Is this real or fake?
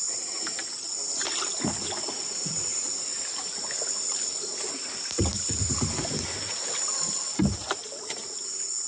real